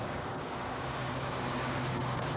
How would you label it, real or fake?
fake